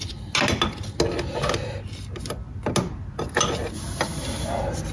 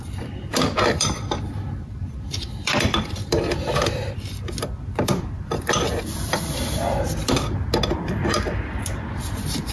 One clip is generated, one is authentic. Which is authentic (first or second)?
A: first